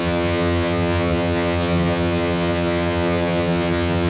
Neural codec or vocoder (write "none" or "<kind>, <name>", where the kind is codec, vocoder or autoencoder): vocoder, HiFi-GAN